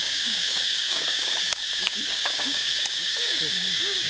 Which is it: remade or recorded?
remade